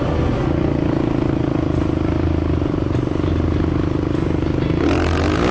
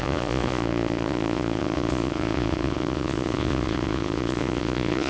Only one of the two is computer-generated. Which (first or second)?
second